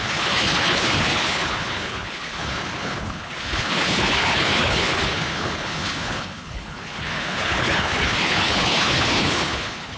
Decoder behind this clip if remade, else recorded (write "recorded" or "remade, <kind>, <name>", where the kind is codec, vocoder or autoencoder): remade, codec, HILCodec